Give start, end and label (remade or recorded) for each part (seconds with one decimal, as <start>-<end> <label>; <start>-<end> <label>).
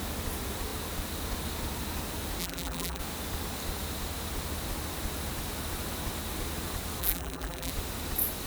0.0-2.4 recorded; 2.4-3.0 remade; 3.0-7.0 recorded; 7.0-7.7 remade; 7.7-8.5 recorded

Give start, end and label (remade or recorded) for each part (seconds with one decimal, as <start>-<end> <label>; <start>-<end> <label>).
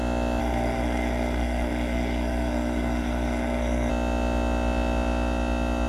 0.0-0.4 recorded; 0.4-3.9 remade; 3.9-5.9 recorded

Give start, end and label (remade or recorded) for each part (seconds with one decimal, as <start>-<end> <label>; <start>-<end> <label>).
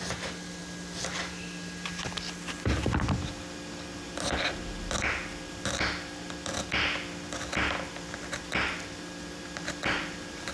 0.0-10.5 recorded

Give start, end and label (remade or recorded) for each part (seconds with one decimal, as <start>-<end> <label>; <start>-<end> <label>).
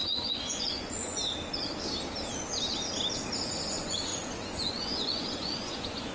0.0-1.2 remade; 1.2-3.5 recorded; 3.5-6.1 remade